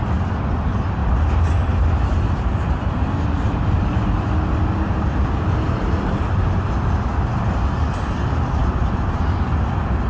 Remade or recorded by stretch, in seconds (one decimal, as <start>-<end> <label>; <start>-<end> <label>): 0.0-10.1 recorded